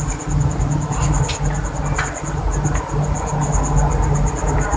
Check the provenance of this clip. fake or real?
real